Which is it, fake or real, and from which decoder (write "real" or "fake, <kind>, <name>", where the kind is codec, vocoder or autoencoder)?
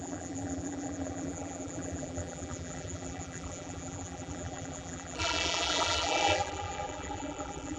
fake, vocoder, BigVGAN v2